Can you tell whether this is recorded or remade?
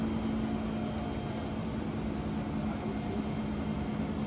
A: recorded